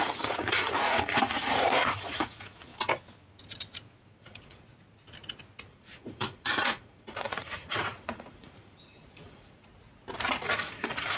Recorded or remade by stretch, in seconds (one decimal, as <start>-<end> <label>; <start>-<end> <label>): 0.0-2.7 remade; 2.7-4.2 recorded; 4.2-4.7 remade; 4.7-5.7 recorded; 5.7-9.7 remade; 9.7-10.4 recorded; 10.4-11.2 remade